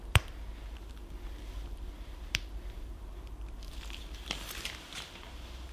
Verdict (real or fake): fake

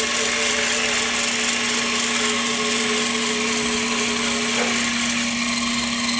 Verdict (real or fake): real